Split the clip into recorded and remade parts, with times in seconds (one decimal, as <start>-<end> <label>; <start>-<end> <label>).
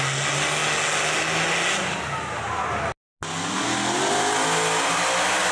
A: 0.0-5.5 recorded